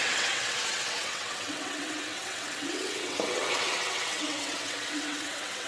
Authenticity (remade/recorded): remade